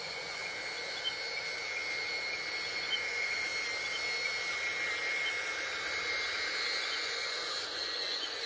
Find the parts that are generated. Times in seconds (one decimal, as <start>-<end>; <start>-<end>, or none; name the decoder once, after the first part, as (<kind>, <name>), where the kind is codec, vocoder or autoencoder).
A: 0.0-0.4 (vocoder, Vocos); 2.7-3.5; 6.8-8.5